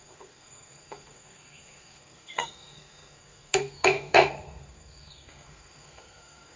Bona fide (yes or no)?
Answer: no